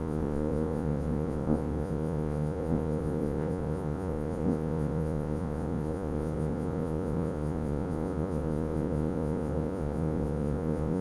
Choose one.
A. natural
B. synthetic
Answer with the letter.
B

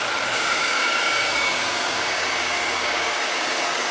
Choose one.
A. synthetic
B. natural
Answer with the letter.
A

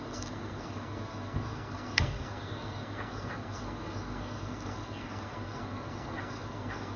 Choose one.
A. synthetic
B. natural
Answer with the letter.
A